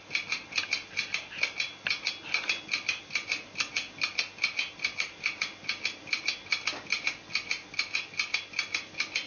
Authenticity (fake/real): real